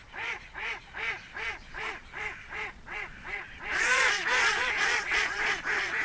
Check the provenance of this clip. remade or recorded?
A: remade